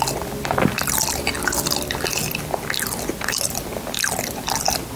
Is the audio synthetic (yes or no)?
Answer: no